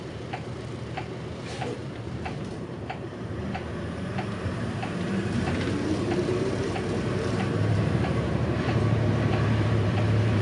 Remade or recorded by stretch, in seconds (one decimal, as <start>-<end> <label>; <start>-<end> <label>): 0.0-3.4 remade; 3.4-4.0 recorded; 4.0-10.4 remade